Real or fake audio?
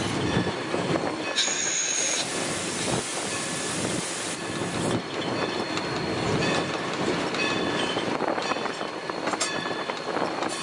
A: real